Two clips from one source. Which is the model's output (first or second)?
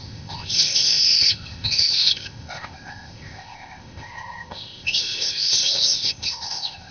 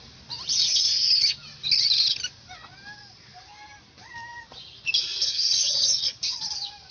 first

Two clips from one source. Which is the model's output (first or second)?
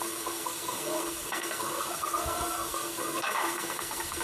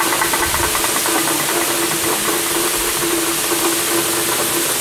first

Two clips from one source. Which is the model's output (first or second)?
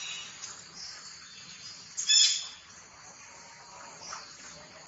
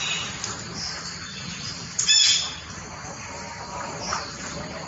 second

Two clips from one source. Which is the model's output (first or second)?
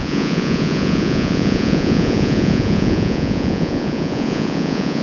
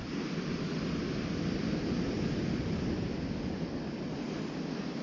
first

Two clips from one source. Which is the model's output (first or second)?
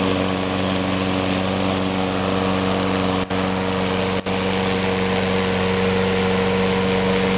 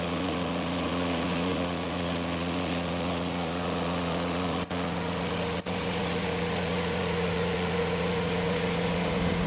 second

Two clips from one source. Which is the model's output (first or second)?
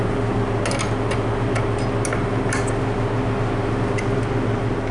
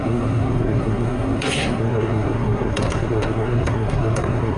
second